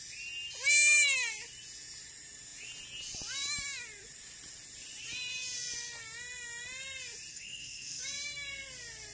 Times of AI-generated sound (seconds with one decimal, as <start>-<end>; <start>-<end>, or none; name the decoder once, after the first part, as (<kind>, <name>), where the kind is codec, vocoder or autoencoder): 7.3-8.0 (codec, SNAC)